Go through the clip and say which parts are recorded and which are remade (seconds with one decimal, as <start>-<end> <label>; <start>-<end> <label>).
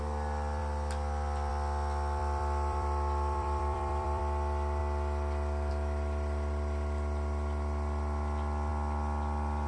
0.0-2.2 recorded; 2.2-4.2 remade; 4.2-9.7 recorded